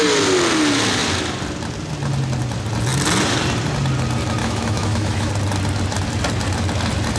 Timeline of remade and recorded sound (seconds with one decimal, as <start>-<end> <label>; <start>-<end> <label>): 0.0-4.4 recorded; 4.4-5.3 remade; 5.3-7.2 recorded